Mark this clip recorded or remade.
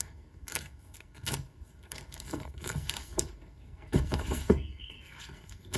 remade